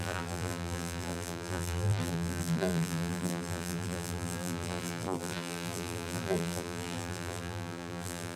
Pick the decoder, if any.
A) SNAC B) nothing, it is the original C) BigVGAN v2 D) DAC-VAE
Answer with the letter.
C